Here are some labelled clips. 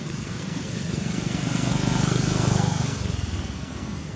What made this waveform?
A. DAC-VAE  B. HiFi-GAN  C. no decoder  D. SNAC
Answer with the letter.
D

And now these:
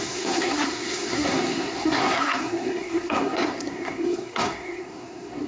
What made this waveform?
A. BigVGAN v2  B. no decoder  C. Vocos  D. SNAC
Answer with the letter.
D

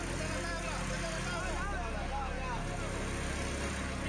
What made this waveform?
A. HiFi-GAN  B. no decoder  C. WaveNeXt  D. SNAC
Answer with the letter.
B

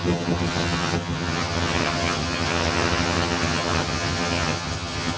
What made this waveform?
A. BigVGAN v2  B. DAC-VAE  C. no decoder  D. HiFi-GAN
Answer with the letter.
D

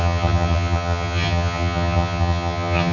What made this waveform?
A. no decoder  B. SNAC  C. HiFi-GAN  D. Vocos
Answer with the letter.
C